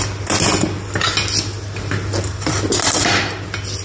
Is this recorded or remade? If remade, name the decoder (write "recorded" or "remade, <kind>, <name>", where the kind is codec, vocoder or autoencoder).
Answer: recorded